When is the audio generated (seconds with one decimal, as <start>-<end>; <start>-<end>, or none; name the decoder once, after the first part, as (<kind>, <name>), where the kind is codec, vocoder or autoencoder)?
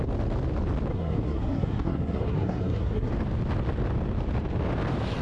0.9-3.1 (codec, SNAC)